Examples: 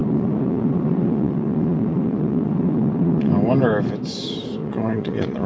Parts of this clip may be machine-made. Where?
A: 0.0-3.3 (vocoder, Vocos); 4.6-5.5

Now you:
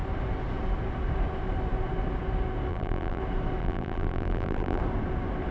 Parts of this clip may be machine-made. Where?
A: 2.7-3.2 (vocoder, BigVGAN v2); 3.6-4.8

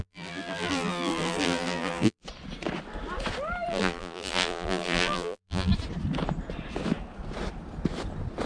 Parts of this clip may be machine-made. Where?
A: 0.0-2.2 (vocoder, BigVGAN v2); 3.7-5.7

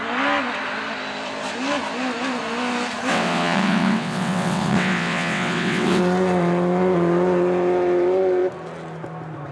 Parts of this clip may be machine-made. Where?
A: 3.1-6.0 (vocoder, WaveNeXt)

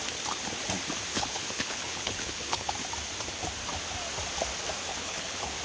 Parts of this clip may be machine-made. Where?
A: 1.1-2.7 (codec, HILCodec); 4.9-5.6

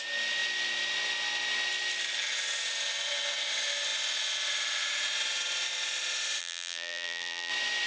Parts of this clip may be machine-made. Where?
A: 6.4-7.5 (vocoder, BigVGAN v2)

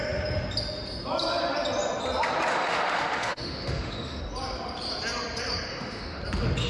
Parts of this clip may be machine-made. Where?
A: 2.5-4.2 (autoencoder, DAC-VAE); 5.7-6.2